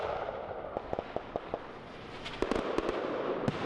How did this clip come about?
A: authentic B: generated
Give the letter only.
A